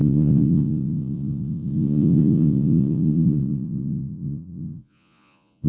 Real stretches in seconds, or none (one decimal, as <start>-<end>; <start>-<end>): none